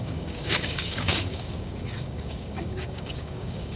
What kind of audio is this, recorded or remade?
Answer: remade